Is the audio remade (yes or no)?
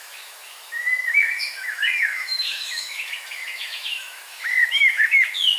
yes